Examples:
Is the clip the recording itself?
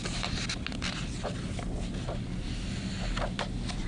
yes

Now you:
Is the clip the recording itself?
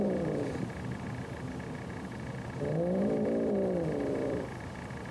yes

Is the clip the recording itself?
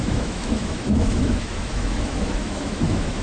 no